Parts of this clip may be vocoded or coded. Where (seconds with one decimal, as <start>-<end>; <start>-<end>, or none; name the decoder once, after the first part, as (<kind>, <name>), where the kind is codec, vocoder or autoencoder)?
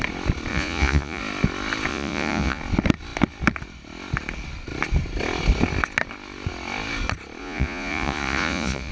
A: 0.5-1.2 (vocoder, Vocos); 1.9-2.6; 7.4-8.9